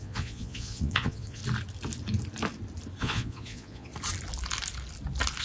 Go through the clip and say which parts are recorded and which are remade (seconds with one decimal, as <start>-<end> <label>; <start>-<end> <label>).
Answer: 0.0-1.4 remade; 1.4-3.0 recorded; 3.0-3.9 remade; 3.9-5.4 recorded